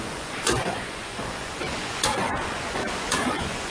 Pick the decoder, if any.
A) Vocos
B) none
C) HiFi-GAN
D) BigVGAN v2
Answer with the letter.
A